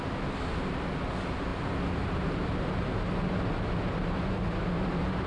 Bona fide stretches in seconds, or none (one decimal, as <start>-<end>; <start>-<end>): 0.0-5.3